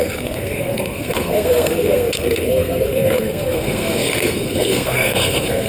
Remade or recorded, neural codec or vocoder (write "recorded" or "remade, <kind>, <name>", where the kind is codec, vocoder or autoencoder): remade, codec, SNAC